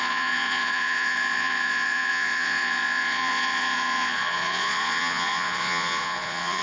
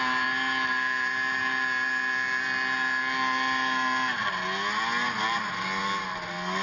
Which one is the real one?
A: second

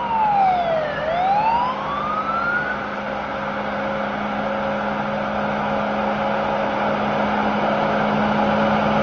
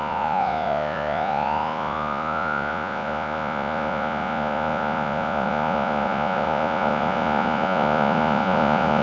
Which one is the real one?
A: first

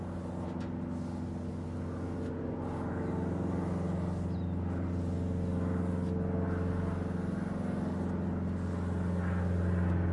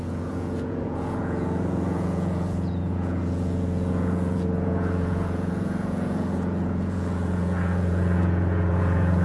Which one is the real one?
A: first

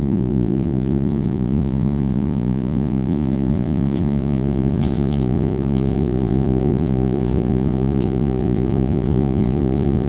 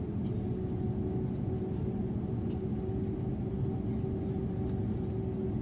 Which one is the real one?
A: second